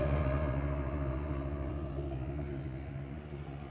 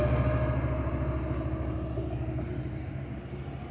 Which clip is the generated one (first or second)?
first